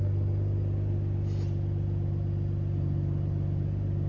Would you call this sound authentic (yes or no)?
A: yes